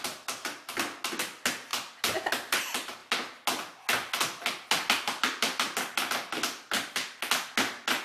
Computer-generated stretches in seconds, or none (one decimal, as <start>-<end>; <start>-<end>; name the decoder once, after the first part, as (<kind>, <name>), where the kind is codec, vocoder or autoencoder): none

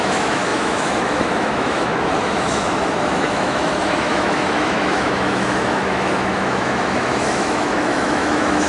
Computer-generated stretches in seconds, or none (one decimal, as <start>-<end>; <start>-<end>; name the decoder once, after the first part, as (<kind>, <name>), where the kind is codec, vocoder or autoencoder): 0.0-8.7 (autoencoder, DAC-VAE)

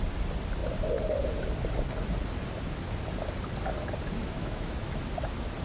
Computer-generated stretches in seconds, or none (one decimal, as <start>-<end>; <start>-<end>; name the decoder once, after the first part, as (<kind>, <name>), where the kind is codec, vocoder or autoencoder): 4.2-5.0 (autoencoder, DAC-VAE)

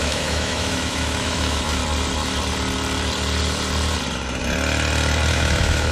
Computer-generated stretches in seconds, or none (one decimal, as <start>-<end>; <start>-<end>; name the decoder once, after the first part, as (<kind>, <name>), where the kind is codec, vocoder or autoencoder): 0.0-1.8 (autoencoder, DAC-VAE); 5.3-5.9